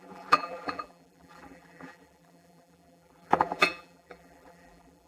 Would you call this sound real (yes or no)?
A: no